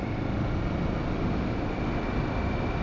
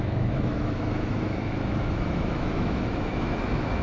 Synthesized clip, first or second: second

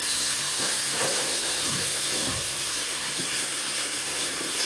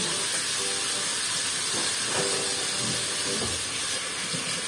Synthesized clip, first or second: first